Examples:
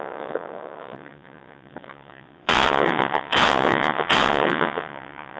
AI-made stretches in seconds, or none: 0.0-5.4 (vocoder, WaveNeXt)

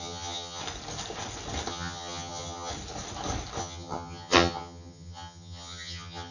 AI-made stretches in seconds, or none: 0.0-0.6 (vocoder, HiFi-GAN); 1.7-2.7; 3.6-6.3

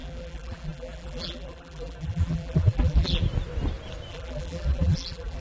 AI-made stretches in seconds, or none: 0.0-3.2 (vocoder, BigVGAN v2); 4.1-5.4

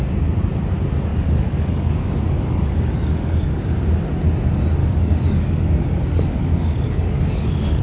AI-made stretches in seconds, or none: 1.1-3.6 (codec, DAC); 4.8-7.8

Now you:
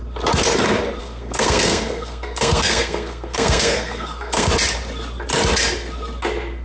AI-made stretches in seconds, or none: 1.0-4.5 (codec, SNAC)

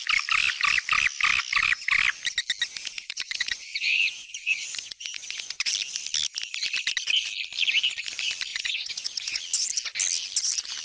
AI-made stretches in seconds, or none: 2.8-5.7 (vocoder, Vocos); 8.5-9.4